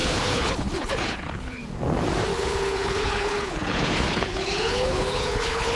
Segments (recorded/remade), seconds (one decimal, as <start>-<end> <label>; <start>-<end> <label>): 0.0-1.6 remade; 1.6-2.3 recorded; 2.3-5.8 remade